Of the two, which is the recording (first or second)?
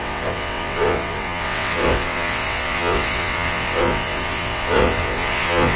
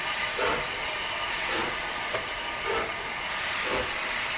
second